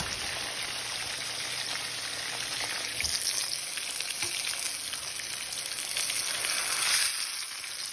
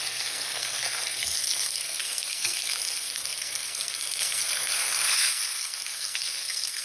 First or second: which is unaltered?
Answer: first